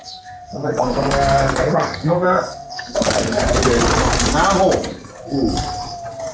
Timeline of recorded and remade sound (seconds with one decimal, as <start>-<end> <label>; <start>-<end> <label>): 0.0-3.4 remade; 3.4-6.3 recorded